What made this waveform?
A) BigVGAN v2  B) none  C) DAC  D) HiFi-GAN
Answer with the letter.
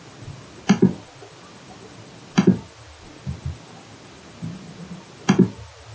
B